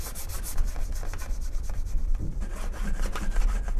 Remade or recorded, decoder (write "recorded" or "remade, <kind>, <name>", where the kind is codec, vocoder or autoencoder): recorded